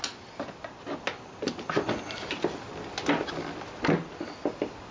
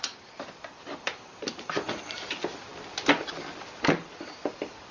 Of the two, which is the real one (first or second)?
first